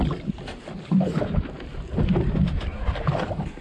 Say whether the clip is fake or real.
real